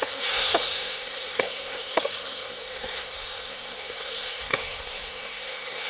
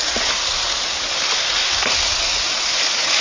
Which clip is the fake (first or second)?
first